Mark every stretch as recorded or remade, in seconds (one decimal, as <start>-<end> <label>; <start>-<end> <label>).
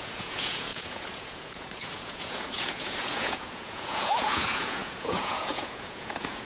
0.0-6.5 remade